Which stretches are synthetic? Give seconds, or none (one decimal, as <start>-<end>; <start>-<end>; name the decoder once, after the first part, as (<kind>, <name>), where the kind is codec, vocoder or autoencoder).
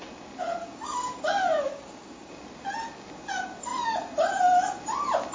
0.6-1.2 (codec, DAC); 1.7-2.3